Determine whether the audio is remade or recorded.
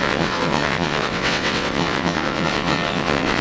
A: remade